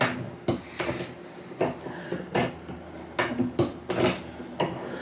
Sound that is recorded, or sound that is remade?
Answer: recorded